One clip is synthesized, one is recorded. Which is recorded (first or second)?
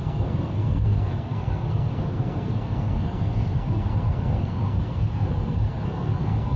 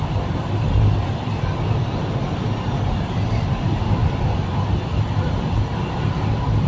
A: second